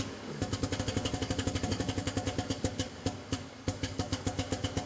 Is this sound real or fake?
fake